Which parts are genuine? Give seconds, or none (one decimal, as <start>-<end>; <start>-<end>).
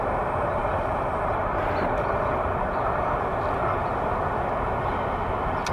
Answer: 0.0-0.6; 2.4-5.7